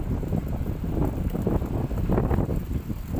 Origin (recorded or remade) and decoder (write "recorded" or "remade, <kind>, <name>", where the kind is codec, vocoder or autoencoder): recorded